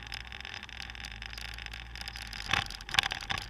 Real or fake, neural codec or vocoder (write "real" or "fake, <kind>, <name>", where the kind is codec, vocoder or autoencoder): real